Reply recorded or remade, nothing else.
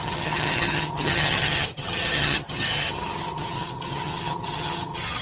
remade